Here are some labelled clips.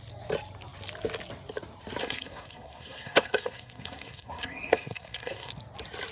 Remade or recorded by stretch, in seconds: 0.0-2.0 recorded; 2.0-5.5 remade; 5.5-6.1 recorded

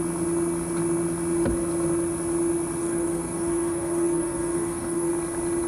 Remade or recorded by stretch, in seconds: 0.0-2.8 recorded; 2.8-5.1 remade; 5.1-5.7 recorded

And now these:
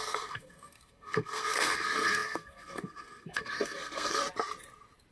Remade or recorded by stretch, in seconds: 0.0-4.2 remade; 4.2-5.1 recorded